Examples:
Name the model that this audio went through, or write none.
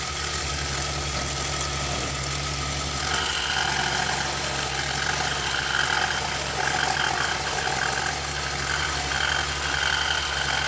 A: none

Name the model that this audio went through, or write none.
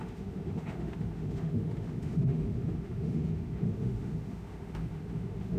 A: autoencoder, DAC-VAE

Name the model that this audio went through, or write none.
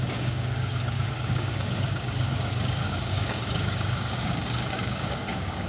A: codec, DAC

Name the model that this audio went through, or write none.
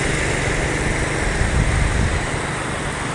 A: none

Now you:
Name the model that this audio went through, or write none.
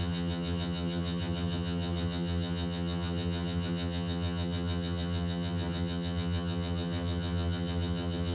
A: vocoder, HiFi-GAN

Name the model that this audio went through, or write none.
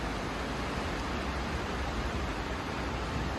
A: none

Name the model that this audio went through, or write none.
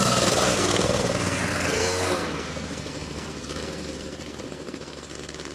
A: codec, SNAC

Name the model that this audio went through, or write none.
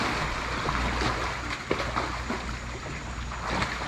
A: none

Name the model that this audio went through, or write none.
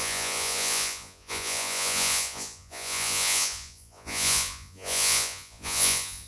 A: vocoder, Vocos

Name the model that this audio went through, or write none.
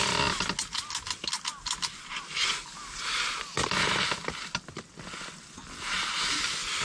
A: none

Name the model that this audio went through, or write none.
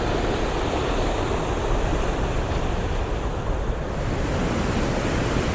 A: none